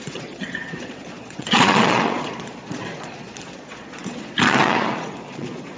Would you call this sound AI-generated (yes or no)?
yes